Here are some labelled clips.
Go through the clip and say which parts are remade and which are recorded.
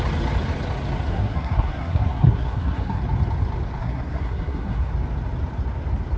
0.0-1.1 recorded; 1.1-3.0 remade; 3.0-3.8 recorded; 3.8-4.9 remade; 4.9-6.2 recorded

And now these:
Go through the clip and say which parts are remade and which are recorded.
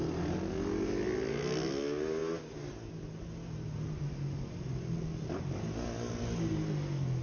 0.0-7.2 recorded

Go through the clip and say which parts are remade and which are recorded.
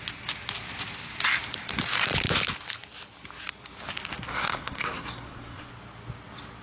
0.0-4.3 recorded; 4.3-5.7 remade; 5.7-6.6 recorded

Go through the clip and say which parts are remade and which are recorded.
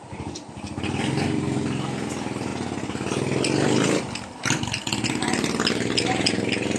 0.0-6.8 recorded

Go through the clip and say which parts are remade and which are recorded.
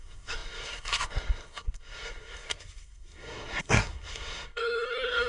0.0-5.3 remade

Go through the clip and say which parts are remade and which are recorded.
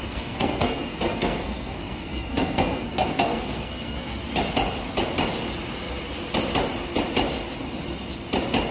0.0-4.2 remade; 4.2-8.7 recorded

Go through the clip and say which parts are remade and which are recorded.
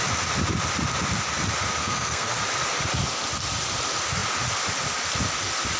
0.0-1.8 recorded; 1.8-2.4 remade; 2.4-5.8 recorded